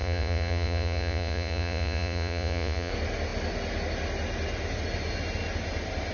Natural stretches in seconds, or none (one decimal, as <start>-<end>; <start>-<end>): 2.9-6.1